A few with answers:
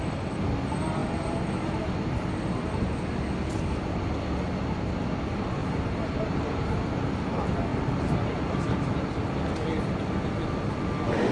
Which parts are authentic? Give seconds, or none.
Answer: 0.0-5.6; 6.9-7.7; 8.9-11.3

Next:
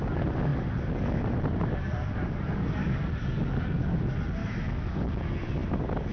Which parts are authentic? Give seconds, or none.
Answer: 0.0-4.4; 4.9-6.1

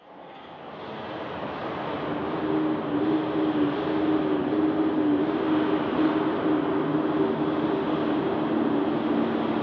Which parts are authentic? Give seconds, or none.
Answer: 0.0-9.6

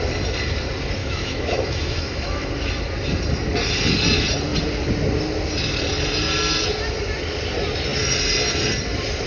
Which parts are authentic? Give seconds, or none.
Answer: 0.0-1.0; 2.5-9.3

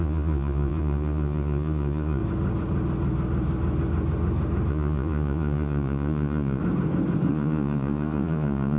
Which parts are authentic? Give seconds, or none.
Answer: 2.2-4.7; 6.6-7.3

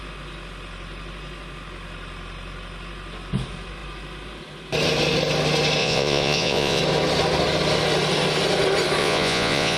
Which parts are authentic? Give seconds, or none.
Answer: 0.0-5.8; 6.8-9.0

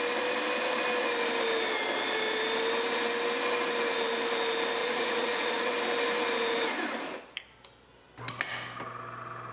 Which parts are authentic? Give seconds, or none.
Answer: 0.0-4.8; 5.7-9.5

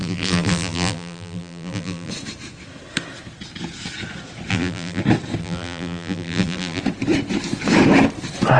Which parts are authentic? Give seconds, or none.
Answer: 2.1-4.5; 5.0-5.4; 6.8-8.6